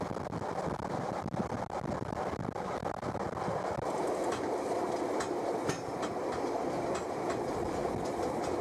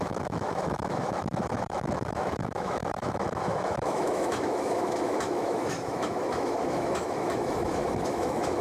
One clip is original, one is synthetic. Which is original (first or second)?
first